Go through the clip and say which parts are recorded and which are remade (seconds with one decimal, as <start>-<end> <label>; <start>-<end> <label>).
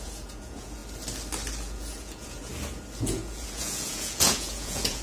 0.0-0.8 remade; 0.8-1.5 recorded; 1.5-2.5 remade; 2.5-3.0 recorded; 3.0-5.0 remade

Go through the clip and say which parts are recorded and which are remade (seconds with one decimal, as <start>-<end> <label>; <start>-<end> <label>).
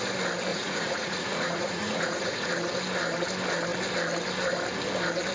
0.0-0.5 recorded; 0.5-2.5 remade; 2.5-5.3 recorded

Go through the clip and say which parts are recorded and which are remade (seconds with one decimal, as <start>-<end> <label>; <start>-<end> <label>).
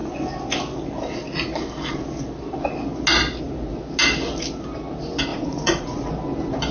0.0-5.3 recorded; 5.3-6.1 remade; 6.1-6.7 recorded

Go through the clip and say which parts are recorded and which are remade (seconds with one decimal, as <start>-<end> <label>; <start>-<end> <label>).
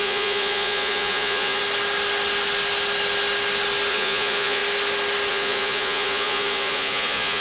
0.0-1.6 remade; 1.6-3.9 recorded; 3.9-4.6 remade; 4.6-5.3 recorded; 5.3-7.4 remade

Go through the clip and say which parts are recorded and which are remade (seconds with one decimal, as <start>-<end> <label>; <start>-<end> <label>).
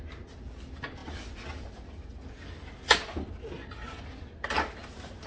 0.0-5.3 recorded